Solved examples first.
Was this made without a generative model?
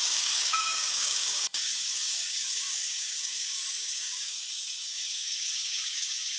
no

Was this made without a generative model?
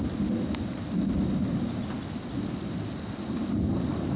yes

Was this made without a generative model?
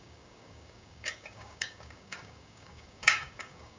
no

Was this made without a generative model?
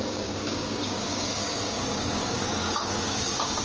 no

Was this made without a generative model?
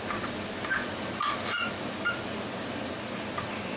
yes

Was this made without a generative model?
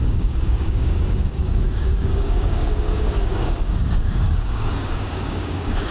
no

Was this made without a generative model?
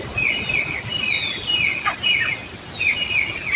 yes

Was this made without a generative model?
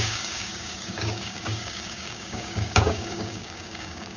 no